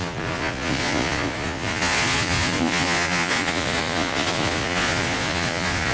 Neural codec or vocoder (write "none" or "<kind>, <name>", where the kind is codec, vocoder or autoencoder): vocoder, Vocos